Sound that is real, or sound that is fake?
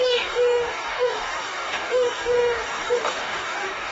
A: fake